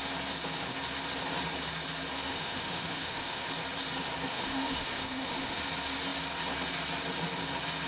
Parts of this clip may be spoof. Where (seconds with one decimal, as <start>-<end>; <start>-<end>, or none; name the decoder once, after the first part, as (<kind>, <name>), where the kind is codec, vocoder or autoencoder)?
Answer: 2.3-3.5 (autoencoder, DAC-VAE); 4.3-5.6